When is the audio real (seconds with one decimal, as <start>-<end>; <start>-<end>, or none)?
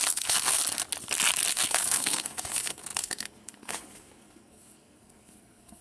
0.6-1.5